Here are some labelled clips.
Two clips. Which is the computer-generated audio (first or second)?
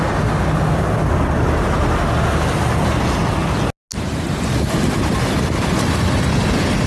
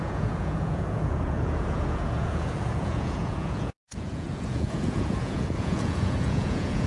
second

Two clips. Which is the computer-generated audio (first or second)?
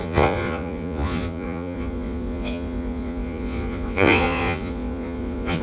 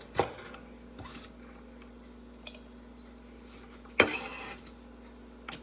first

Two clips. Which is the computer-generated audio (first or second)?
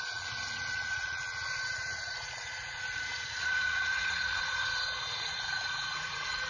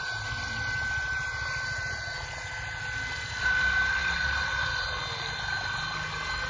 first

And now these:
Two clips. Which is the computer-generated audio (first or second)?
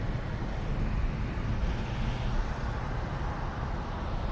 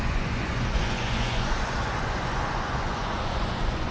second